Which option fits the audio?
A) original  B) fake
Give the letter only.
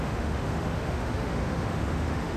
B